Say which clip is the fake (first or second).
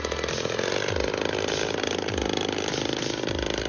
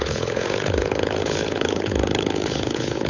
second